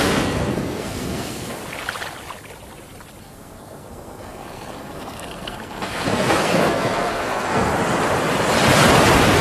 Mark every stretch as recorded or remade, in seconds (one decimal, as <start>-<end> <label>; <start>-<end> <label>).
0.0-1.6 remade; 1.6-3.2 recorded; 3.2-7.7 remade; 7.7-9.4 recorded